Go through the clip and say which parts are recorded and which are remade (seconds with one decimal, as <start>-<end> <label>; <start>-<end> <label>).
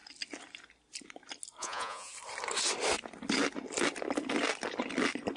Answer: 0.0-1.6 recorded; 1.6-2.1 remade; 2.1-5.4 recorded